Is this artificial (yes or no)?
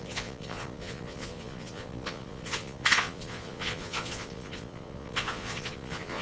yes